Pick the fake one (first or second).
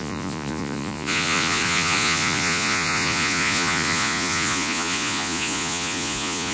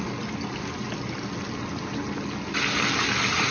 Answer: first